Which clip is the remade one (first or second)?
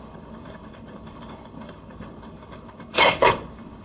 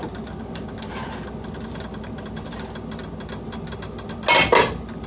first